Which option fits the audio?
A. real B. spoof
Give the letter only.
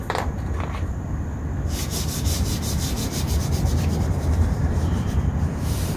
B